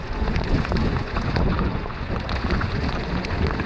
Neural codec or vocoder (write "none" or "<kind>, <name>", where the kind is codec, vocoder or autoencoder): vocoder, Vocos